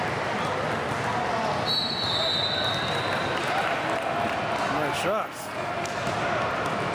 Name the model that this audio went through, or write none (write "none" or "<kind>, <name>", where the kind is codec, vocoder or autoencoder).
none